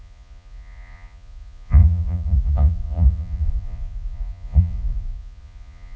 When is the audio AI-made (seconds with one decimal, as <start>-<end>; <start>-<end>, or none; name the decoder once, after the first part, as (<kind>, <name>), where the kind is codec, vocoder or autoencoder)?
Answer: 0.0-6.0 (vocoder, Vocos)